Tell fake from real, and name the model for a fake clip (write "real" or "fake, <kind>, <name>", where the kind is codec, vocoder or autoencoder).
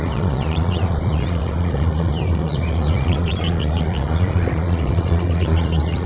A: fake, vocoder, Vocos